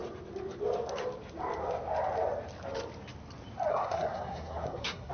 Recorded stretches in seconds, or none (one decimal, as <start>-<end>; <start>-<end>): 0.0-3.7